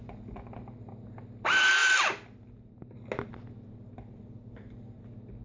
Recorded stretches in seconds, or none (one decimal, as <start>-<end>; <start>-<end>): 0.0-5.4